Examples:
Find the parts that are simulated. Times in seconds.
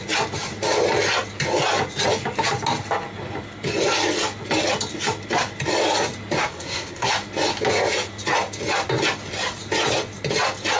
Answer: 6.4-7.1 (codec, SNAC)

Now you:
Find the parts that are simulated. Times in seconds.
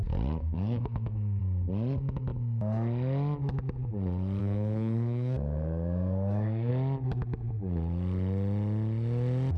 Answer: 0.4-1.4 (codec, SNAC); 4.4-6.7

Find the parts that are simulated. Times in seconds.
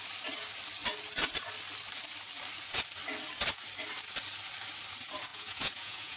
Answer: 5.3-6.2 (vocoder, Vocos)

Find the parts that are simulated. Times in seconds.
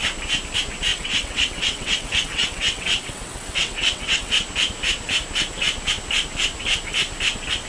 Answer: 0.9-4.3 (vocoder, WaveNeXt)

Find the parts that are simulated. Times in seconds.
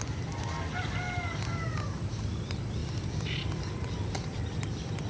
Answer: none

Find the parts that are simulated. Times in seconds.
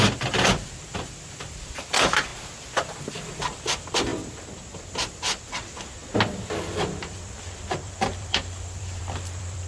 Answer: 0.0-2.3 (vocoder, BigVGAN v2); 3.0-4.1; 4.9-6.0; 6.6-9.7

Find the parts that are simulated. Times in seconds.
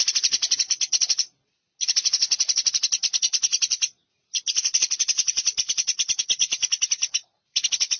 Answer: 0.0-0.4 (vocoder, BigVGAN v2); 3.4-8.0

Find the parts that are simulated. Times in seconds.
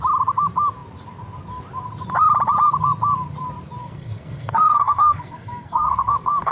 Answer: 3.8-6.5 (codec, SNAC)